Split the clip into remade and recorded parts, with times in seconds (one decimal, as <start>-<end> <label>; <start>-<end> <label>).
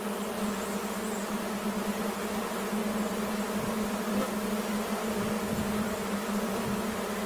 0.0-7.3 recorded